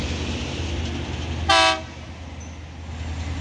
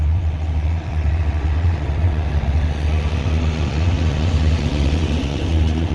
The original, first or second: first